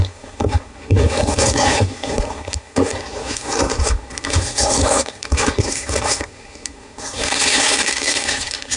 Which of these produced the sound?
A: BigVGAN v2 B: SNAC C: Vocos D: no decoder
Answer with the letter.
B